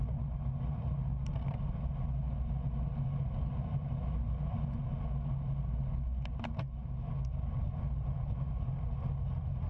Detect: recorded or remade recorded